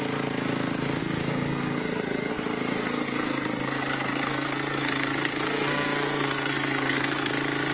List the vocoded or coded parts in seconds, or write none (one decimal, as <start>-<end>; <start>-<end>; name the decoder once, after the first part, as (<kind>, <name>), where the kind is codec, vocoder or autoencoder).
1.0-2.3 (codec, SNAC); 2.7-7.3